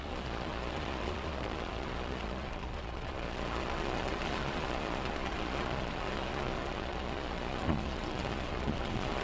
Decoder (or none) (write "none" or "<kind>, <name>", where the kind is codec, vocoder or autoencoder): vocoder, Vocos